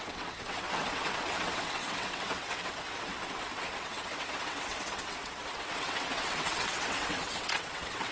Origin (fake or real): fake